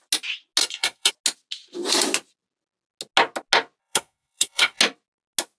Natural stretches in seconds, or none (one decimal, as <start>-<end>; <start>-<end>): 0.0-0.6; 1.1-3.8; 4.8-5.6